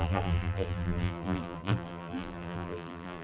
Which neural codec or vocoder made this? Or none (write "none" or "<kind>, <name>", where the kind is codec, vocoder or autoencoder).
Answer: vocoder, BigVGAN v2